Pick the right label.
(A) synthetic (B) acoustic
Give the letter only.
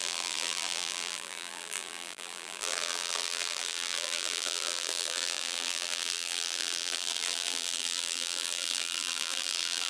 A